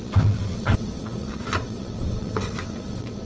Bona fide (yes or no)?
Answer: no